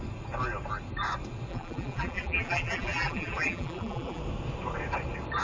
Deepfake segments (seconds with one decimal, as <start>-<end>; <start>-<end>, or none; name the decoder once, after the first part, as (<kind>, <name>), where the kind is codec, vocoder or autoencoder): 1.5-4.2 (vocoder, BigVGAN v2)